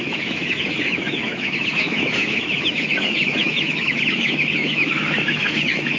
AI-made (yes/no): yes